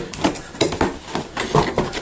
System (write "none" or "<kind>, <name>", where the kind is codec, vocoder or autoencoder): none